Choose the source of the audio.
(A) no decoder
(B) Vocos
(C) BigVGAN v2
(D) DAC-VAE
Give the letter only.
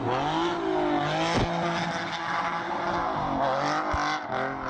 A